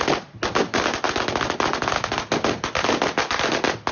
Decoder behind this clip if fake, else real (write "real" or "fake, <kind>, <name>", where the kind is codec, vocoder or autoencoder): real